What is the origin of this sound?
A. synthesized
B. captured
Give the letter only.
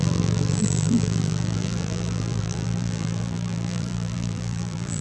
A